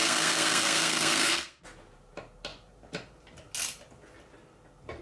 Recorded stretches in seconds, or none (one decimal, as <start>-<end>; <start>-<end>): 1.6-5.0